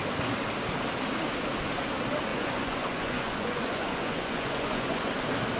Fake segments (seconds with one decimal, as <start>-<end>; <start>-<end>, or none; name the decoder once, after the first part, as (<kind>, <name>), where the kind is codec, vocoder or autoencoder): 2.3-5.1 (vocoder, Vocos)